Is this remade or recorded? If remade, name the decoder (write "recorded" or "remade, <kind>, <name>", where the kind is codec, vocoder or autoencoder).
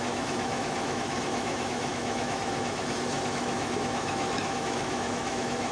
remade, autoencoder, DAC-VAE